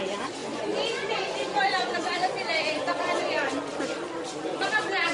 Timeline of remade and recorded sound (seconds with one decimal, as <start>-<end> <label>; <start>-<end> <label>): 0.0-0.4 recorded; 0.4-3.5 remade; 3.5-5.1 recorded

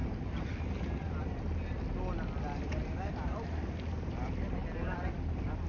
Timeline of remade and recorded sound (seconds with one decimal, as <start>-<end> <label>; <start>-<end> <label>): 0.0-5.7 recorded